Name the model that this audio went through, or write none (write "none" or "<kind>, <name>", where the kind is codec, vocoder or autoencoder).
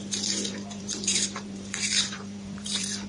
vocoder, BigVGAN v2